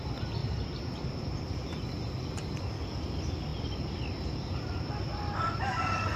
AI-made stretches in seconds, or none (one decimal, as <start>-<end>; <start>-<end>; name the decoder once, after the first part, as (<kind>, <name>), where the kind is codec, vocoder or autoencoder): 0.4-1.2 (vocoder, BigVGAN v2)